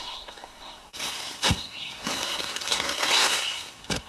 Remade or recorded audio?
remade